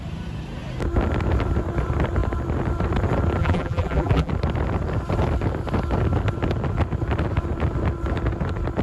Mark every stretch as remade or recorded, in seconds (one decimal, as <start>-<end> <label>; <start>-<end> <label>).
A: 0.0-3.4 recorded; 3.4-4.3 remade; 4.3-8.8 recorded